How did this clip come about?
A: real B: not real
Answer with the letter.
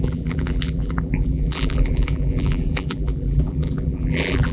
B